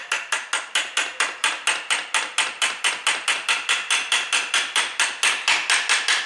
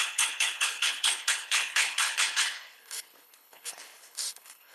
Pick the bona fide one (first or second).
first